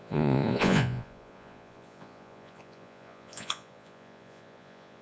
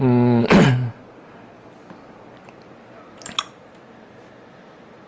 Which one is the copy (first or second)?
first